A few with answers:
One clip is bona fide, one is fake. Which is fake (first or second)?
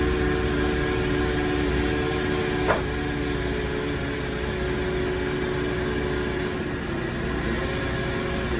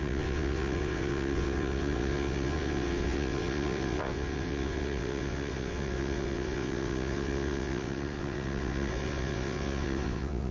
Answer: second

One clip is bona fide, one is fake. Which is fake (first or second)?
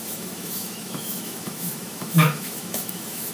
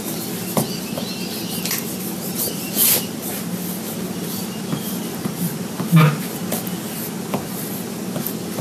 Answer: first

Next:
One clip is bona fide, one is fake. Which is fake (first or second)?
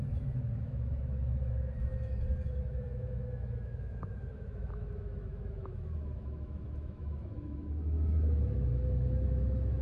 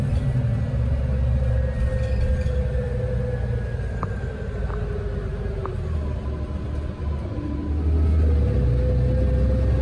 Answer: first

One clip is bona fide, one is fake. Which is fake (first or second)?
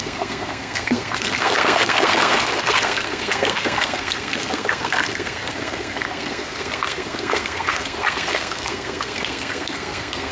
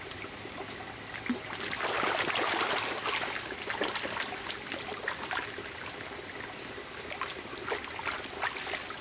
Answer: first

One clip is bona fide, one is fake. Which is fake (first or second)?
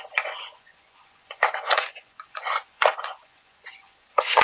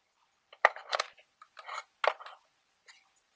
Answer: first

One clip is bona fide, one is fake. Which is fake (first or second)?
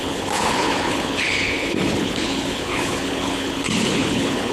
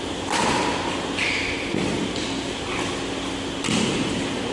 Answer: first